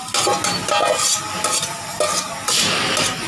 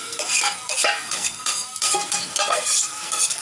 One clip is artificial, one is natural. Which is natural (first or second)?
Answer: first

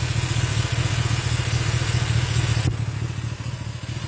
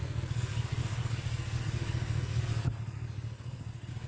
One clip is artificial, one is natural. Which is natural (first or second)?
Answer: first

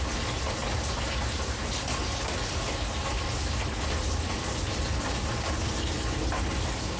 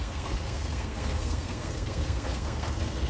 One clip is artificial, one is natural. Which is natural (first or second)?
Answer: first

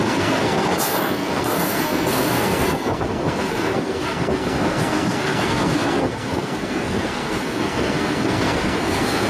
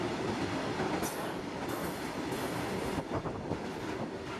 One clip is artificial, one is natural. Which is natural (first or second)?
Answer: second